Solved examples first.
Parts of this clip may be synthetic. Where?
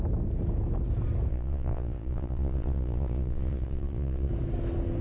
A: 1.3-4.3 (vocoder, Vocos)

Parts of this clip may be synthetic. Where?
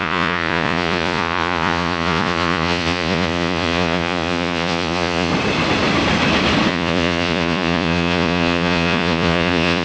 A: 0.0-5.3 (vocoder, Vocos); 6.7-9.8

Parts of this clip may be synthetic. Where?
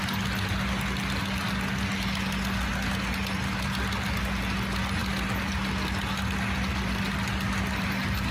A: none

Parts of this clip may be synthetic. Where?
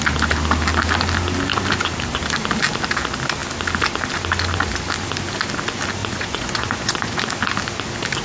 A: 6.0-7.2 (vocoder, Vocos)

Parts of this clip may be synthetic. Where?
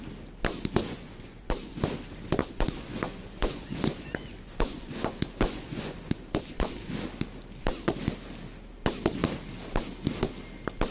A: 0.8-1.7 (vocoder, Vocos); 2.4-6.9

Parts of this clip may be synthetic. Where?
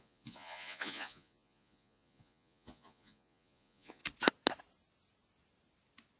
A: 0.0-4.0 (vocoder, Vocos)